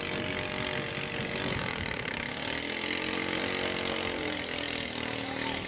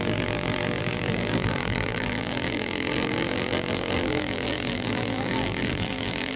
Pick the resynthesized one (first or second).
second